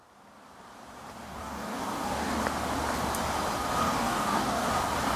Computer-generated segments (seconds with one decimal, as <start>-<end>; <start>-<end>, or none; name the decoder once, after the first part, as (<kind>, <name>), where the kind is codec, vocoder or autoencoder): 1.2-2.4 (codec, DAC); 3.8-4.7

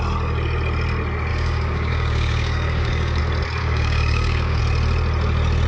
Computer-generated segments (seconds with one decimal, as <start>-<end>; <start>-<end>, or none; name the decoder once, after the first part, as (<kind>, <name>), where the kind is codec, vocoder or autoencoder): 1.3-3.2 (codec, DAC); 3.6-4.6